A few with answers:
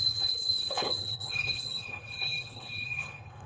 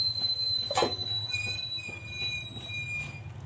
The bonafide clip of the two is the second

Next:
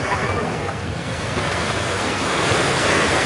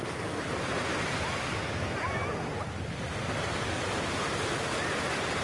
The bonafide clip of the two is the second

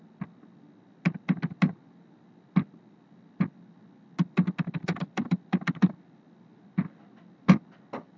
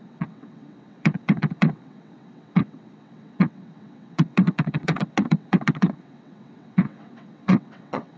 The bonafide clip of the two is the first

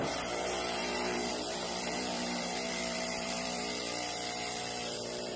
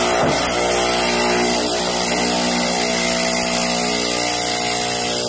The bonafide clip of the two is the second